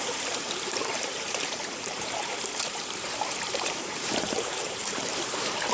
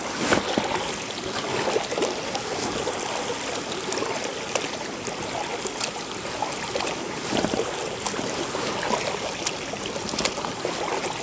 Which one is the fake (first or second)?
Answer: first